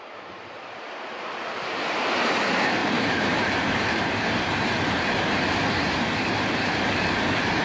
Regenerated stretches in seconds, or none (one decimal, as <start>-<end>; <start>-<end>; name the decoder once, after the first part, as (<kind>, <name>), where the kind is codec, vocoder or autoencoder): 0.0-7.6 (vocoder, BigVGAN v2)